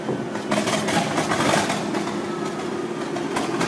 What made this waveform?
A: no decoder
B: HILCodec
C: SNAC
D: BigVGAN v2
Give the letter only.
A